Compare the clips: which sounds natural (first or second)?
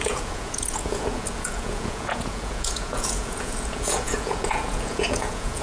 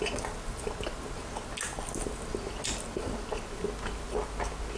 second